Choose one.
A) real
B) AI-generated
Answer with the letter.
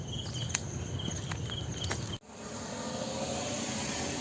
A